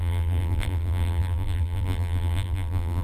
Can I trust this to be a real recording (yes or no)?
no